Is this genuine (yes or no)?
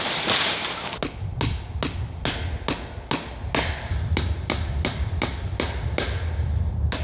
yes